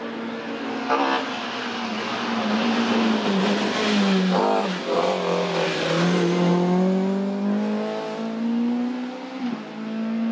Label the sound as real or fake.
real